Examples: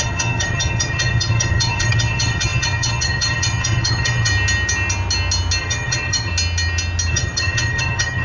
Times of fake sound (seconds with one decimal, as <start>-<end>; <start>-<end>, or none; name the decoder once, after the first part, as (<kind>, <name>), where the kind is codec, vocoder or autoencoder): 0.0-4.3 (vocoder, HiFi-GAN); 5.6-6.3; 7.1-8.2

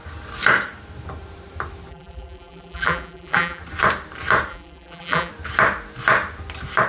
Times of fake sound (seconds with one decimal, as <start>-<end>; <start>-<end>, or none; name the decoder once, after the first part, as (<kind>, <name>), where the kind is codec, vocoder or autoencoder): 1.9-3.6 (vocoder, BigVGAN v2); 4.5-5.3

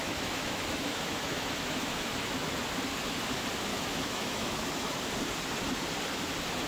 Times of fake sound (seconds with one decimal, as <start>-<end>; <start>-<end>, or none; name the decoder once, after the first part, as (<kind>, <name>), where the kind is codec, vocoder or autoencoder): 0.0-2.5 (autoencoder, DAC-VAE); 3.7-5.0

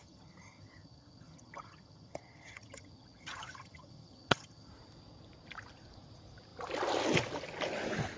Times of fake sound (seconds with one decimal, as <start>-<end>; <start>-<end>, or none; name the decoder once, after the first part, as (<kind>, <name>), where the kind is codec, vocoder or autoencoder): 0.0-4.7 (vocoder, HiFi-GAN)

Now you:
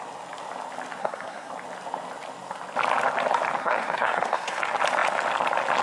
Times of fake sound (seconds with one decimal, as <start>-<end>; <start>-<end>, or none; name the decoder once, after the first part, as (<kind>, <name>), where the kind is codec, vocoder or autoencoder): 1.0-1.5 (codec, SNAC); 3.6-4.6

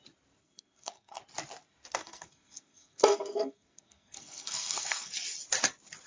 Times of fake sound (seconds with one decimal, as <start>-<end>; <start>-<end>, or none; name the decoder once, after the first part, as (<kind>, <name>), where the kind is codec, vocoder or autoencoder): 0.4-1.2 (codec, SNAC); 2.0-5.1